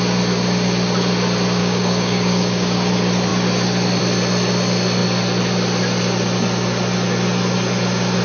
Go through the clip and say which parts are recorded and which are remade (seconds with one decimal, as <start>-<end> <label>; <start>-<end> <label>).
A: 0.0-1.6 recorded; 1.6-2.9 remade; 2.9-8.2 recorded